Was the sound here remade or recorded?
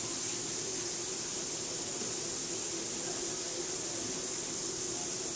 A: recorded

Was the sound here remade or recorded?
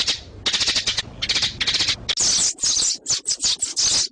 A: recorded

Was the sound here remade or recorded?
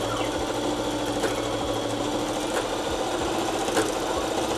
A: recorded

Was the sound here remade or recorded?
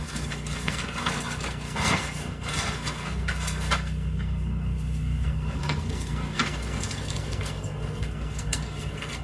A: remade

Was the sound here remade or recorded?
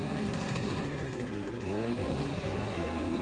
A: remade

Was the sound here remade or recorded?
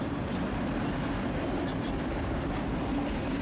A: recorded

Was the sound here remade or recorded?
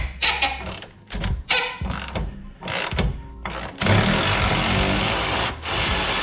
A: recorded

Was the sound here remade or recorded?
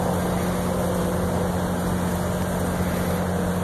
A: recorded